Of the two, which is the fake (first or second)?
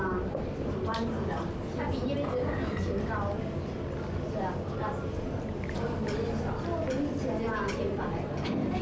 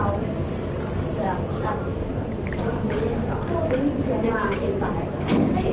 second